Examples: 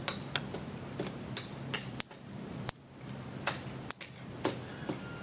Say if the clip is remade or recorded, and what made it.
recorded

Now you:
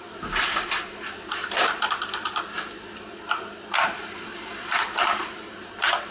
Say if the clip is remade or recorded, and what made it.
remade, vocoder, BigVGAN v2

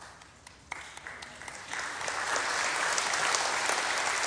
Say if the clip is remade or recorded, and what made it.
remade, vocoder, BigVGAN v2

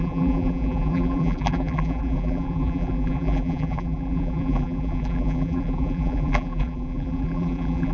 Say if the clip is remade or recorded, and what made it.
remade, vocoder, BigVGAN v2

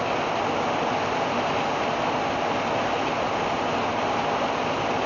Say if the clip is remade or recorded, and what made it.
recorded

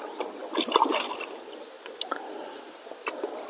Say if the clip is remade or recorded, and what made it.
recorded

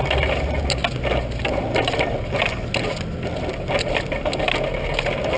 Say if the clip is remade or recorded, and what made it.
recorded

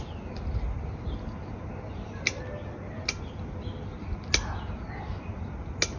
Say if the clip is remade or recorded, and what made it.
recorded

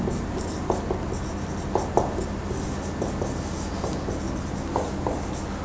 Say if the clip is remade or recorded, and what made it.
recorded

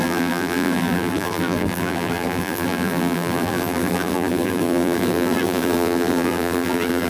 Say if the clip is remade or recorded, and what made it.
remade, vocoder, BigVGAN v2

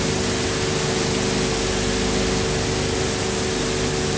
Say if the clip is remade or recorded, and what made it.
recorded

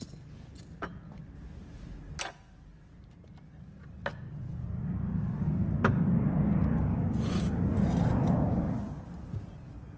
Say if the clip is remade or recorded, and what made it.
recorded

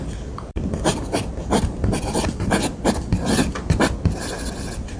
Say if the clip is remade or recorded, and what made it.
remade, vocoder, BigVGAN v2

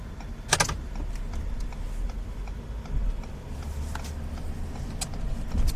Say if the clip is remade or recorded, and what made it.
recorded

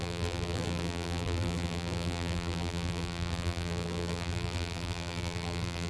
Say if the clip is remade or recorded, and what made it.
remade, vocoder, BigVGAN v2